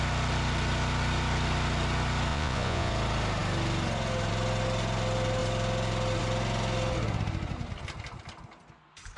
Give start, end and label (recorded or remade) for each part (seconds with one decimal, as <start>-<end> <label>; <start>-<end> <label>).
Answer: 0.0-2.3 recorded; 2.3-2.9 remade; 2.9-9.2 recorded